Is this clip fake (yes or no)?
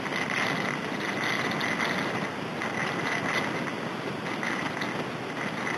no